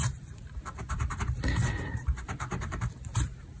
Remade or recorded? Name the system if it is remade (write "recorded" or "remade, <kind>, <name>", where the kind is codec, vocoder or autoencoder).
remade, vocoder, BigVGAN v2